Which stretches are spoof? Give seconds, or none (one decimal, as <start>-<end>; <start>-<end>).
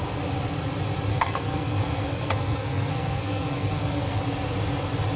1.1-4.2